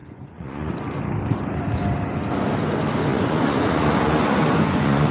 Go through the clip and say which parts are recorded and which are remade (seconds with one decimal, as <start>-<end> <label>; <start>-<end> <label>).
0.0-0.7 remade; 0.7-3.1 recorded; 3.1-5.1 remade